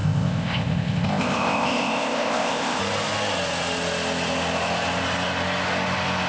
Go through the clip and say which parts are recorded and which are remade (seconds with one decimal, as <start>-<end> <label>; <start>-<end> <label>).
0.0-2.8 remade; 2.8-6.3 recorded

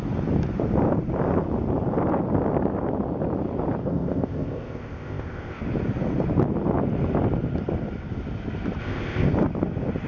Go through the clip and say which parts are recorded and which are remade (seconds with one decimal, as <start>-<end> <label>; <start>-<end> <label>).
0.0-3.8 recorded; 3.8-5.6 remade; 5.6-8.8 recorded; 8.8-9.3 remade; 9.3-10.1 recorded

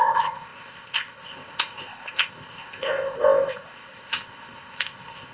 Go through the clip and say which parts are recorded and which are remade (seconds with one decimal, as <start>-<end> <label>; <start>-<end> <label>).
0.0-5.3 remade